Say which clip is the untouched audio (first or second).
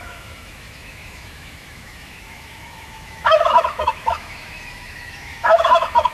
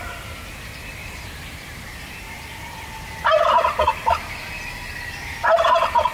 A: second